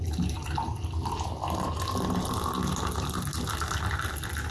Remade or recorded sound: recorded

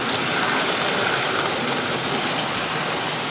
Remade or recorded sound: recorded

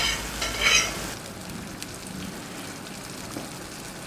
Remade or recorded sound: recorded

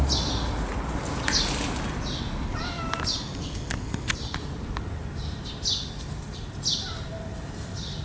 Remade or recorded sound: recorded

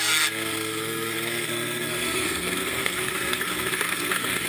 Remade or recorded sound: remade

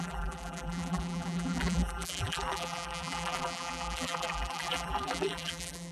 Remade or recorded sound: remade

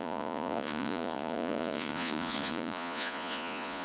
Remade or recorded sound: remade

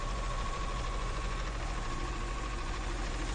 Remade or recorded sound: remade